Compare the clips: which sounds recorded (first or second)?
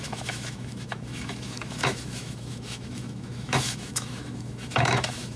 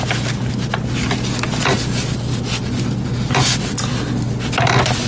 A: second